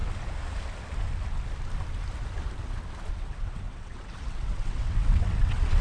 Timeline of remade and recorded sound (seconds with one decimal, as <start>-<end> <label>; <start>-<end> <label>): 0.0-3.1 recorded; 3.1-5.8 remade